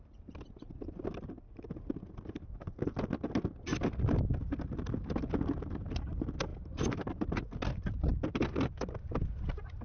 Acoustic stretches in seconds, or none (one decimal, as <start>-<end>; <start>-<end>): 0.0-9.8